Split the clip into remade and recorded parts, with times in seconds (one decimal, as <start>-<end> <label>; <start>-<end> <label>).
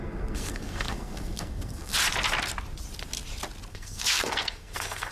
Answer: 0.0-1.9 remade; 1.9-3.7 recorded; 3.7-5.1 remade